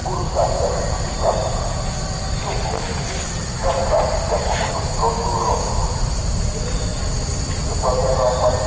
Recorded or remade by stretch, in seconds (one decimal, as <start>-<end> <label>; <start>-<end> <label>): 0.0-4.4 recorded; 4.4-5.7 remade; 5.7-8.7 recorded